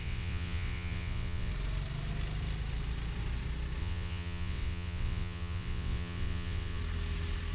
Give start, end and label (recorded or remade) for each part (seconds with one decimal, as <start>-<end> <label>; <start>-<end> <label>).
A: 0.0-1.5 remade; 1.5-3.8 recorded; 3.8-6.8 remade; 6.8-7.5 recorded